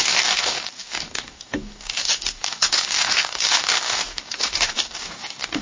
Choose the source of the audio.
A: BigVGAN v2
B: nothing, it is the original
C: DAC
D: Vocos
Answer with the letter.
C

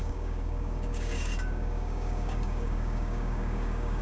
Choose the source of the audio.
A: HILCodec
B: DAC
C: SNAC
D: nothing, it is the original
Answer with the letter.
B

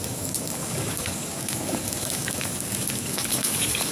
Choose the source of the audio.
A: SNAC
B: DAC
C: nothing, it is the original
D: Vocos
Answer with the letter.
B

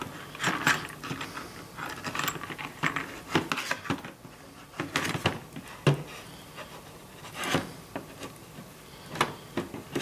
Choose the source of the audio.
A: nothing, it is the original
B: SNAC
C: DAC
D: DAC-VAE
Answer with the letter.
A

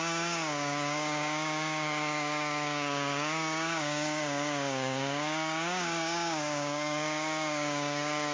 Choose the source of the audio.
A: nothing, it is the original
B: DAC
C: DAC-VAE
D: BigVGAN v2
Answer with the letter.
B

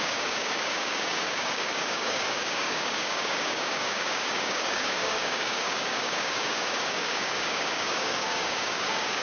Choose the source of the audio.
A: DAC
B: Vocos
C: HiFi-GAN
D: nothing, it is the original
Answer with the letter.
A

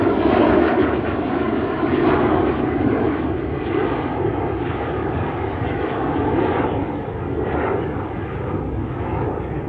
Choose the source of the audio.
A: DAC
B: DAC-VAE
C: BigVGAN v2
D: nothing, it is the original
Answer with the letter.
A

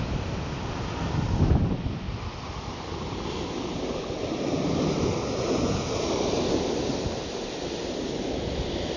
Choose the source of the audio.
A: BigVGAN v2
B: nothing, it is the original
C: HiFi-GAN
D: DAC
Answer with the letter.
B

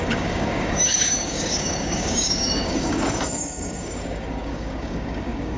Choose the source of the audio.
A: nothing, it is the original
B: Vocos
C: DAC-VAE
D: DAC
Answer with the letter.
D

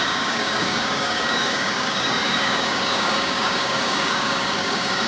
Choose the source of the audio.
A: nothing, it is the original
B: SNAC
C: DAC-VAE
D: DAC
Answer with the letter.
D